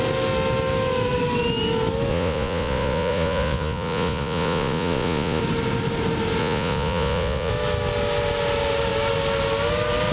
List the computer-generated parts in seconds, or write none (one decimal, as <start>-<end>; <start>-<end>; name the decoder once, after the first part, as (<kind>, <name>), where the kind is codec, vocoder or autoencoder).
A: 2.1-5.4 (vocoder, Vocos); 6.4-7.5